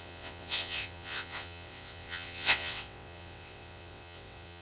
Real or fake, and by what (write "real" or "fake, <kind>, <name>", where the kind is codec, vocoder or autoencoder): fake, vocoder, WaveNeXt